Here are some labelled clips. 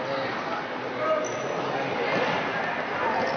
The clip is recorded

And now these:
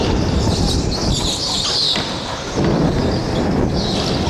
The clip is recorded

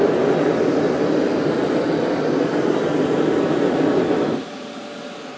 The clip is recorded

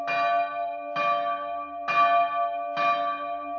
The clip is recorded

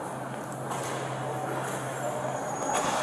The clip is recorded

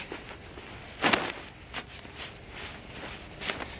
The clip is recorded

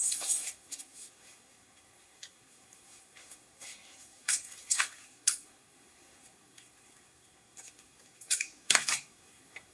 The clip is remade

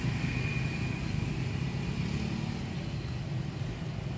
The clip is recorded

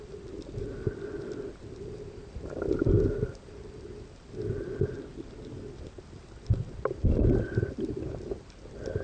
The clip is recorded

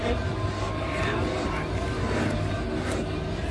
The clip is recorded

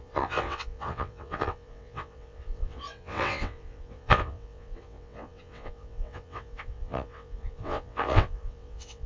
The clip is remade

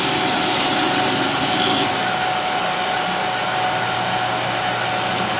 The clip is recorded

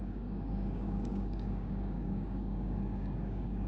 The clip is remade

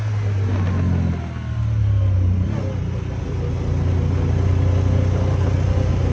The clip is recorded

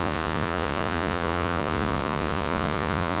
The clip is remade